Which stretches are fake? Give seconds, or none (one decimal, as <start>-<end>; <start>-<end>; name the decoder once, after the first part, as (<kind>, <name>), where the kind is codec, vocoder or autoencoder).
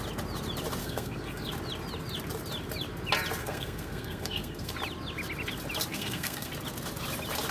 0.8-1.5 (codec, SNAC); 3.4-4.7; 5.9-6.5